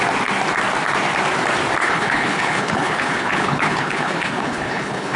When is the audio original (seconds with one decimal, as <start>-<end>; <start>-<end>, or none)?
0.0-1.8